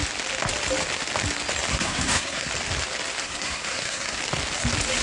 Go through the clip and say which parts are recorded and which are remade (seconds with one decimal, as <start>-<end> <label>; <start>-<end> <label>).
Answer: 0.0-1.7 recorded; 1.7-2.5 remade; 2.5-3.2 recorded; 3.2-4.2 remade; 4.2-5.0 recorded